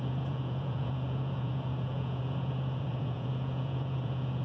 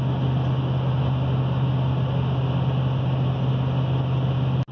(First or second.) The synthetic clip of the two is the first